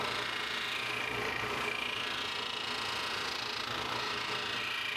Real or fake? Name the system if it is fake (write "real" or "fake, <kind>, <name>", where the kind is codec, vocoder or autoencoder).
fake, vocoder, BigVGAN v2